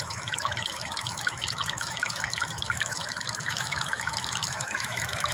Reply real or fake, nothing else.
fake